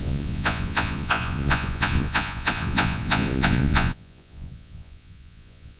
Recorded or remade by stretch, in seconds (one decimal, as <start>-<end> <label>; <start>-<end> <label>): 0.0-5.8 remade